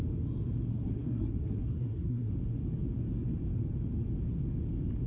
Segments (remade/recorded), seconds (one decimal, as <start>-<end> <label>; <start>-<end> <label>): 0.0-0.7 recorded; 0.7-2.3 remade; 2.3-5.1 recorded